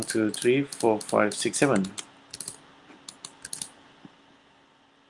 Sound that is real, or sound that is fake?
real